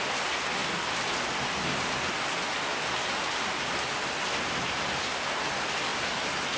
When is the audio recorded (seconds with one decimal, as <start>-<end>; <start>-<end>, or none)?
0.0-6.6